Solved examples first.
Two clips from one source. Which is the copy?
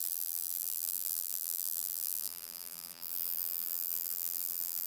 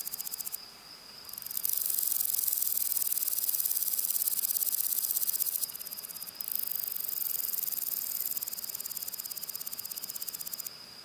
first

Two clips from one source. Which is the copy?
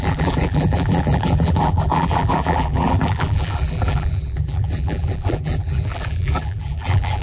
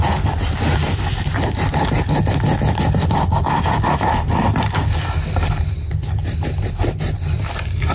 first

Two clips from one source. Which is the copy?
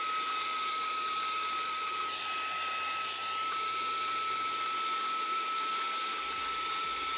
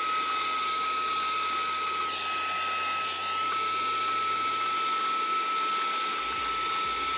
first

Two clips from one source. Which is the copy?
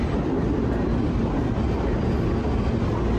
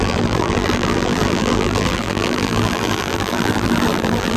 second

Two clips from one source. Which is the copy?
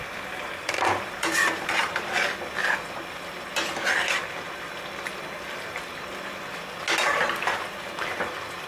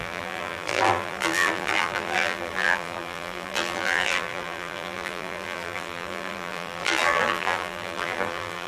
second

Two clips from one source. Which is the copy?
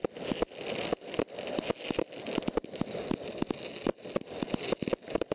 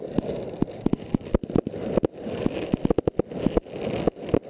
first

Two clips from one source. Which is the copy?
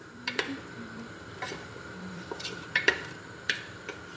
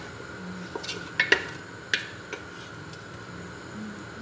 first